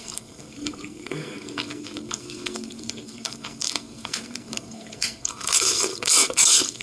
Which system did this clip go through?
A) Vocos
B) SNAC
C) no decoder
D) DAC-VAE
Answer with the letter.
B